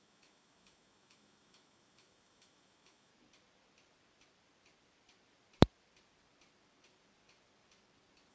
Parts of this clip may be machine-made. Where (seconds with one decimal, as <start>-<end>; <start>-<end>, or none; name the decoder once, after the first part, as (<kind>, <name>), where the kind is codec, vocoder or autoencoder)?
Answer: 0.0-3.1 (autoencoder, DAC-VAE)

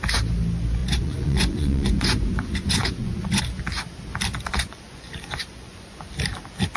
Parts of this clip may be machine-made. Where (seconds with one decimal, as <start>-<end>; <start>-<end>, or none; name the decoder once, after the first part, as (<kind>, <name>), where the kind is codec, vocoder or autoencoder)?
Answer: 0.8-3.4 (vocoder, Vocos); 4.3-6.1

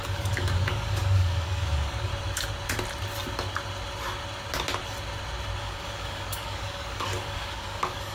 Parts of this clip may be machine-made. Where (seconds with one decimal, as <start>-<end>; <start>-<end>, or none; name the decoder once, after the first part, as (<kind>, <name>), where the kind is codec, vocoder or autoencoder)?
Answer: 0.0-2.1 (codec, DAC); 5.6-8.1

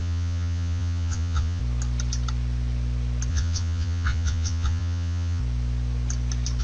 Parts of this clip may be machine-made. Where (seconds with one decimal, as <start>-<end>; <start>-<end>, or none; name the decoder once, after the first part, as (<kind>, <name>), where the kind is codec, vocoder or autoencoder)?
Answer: 0.0-1.6 (vocoder, Vocos); 3.3-5.4